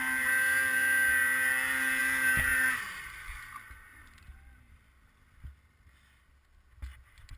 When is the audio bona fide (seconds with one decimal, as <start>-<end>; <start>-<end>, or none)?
0.0-2.5; 4.8-7.4